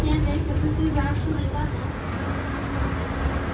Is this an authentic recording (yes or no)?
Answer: yes